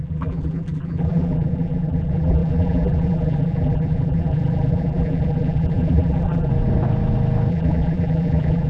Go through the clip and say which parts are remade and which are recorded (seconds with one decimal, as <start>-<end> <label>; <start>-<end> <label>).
0.0-6.5 remade; 6.5-7.5 recorded; 7.5-8.7 remade